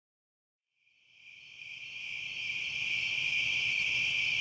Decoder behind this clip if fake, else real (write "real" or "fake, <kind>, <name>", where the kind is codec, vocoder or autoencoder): real